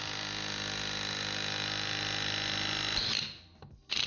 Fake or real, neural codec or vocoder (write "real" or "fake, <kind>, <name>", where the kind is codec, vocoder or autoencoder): real